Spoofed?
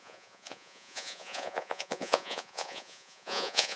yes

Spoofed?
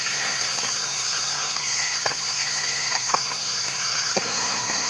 yes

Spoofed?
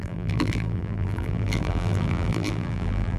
yes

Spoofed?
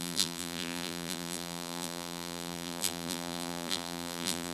yes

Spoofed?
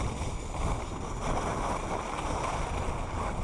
no